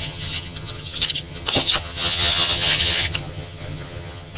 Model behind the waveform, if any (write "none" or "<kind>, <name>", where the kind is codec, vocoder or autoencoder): vocoder, HiFi-GAN